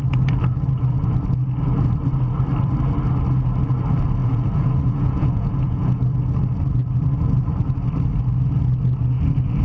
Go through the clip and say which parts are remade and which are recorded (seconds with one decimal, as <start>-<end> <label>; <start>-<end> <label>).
0.0-4.2 recorded; 4.2-6.0 remade; 6.0-9.6 recorded

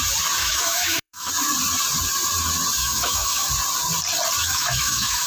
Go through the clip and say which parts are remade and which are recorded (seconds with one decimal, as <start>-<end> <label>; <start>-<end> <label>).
0.0-0.4 recorded; 0.4-1.3 remade; 1.3-2.8 recorded; 2.8-3.5 remade; 3.5-4.4 recorded; 4.4-5.3 remade

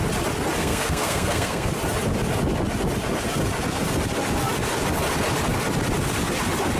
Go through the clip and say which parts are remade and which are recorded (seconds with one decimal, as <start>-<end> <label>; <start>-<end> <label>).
0.0-0.6 recorded; 0.6-1.7 remade; 1.7-6.8 recorded

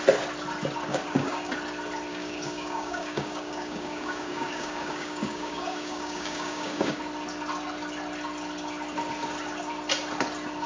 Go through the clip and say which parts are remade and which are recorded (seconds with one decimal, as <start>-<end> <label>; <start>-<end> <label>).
0.0-0.9 recorded; 0.9-1.5 remade; 1.5-2.1 recorded; 2.1-7.0 remade; 7.0-10.7 recorded

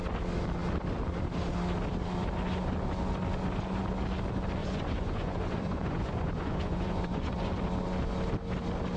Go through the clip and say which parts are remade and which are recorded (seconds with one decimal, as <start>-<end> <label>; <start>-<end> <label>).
0.0-4.6 recorded; 4.6-7.5 remade; 7.5-9.0 recorded

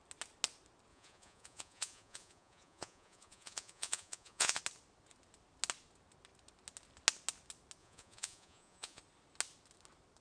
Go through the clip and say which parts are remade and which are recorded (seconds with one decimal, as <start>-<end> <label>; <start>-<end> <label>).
0.0-0.9 recorded; 0.9-4.6 remade; 4.6-7.8 recorded; 7.8-9.0 remade; 9.0-10.2 recorded

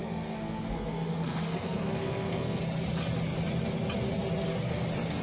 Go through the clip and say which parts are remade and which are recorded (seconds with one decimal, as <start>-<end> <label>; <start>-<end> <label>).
0.0-2.6 remade; 2.6-5.2 recorded

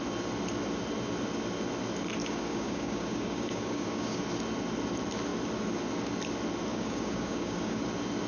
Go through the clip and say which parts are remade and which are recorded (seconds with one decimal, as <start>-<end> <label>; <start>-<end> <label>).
0.0-2.2 recorded; 2.2-4.2 remade; 4.2-6.7 recorded; 6.7-7.8 remade; 7.8-8.3 recorded